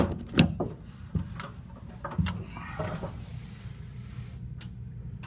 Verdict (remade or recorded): recorded